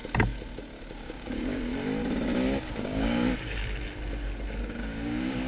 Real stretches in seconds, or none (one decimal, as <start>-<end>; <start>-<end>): 0.0-0.9; 1.7-2.7; 3.6-4.6